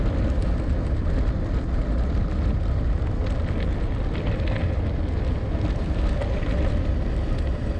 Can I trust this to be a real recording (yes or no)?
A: yes